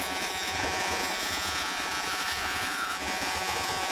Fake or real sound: fake